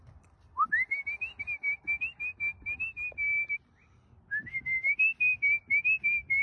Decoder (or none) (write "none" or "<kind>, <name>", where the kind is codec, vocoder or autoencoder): none